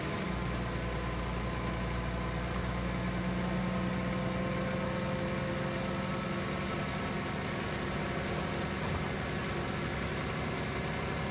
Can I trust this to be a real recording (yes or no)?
yes